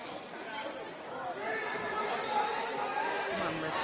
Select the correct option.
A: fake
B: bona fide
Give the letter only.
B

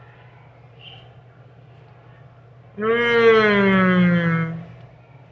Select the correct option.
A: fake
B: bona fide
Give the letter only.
B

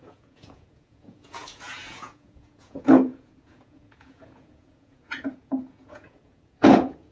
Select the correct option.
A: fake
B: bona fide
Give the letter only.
A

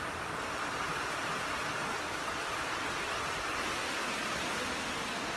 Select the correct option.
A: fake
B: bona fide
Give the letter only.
B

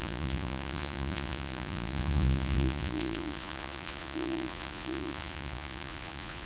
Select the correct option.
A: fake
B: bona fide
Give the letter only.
A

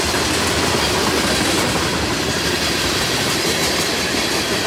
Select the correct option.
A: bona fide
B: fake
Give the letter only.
A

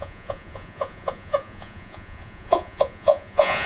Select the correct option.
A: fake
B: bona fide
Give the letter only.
A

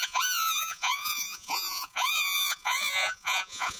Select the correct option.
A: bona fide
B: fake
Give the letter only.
B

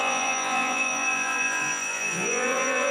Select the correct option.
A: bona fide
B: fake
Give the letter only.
B